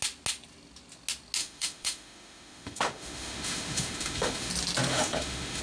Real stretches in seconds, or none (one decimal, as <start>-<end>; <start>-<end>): 0.0-1.4; 4.5-4.9